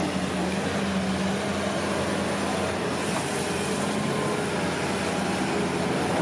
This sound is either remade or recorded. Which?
recorded